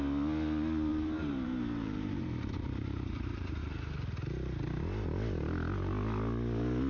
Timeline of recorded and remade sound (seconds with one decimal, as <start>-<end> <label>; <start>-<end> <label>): 0.0-0.9 recorded; 0.9-3.6 remade; 3.6-6.9 recorded